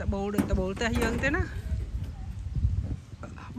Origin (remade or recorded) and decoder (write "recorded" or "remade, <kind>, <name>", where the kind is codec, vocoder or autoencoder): recorded